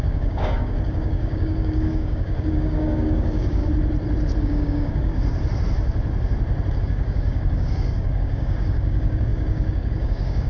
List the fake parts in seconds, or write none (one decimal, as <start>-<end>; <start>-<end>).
0.0-3.6; 4.4-5.1; 6.8-10.5